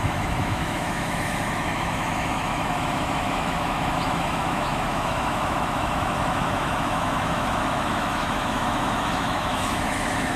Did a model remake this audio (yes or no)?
yes